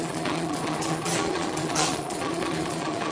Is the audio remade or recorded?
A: remade